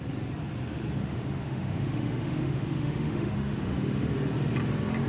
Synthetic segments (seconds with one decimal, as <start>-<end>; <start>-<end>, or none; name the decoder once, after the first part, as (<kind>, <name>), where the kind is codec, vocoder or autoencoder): 1.0-4.1 (autoencoder, DAC-VAE)